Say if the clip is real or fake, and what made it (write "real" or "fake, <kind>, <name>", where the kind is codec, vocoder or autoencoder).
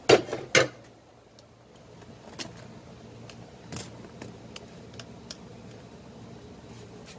real